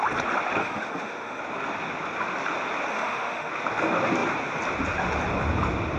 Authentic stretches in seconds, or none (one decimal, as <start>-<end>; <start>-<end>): 0.0-0.6; 1.4-2.9; 3.5-6.0